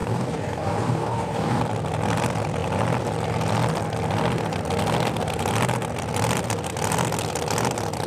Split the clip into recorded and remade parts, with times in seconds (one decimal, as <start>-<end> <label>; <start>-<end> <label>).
0.0-1.6 remade; 1.6-8.1 recorded